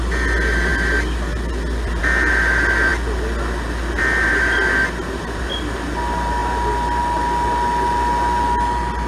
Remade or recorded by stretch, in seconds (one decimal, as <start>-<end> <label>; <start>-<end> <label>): 0.0-9.1 recorded